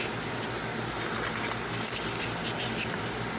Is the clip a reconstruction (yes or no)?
no